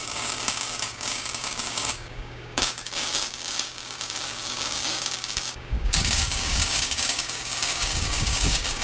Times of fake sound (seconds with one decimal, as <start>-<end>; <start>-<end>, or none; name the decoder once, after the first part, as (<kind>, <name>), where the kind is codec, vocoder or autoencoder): 0.0-8.8 (codec, DAC)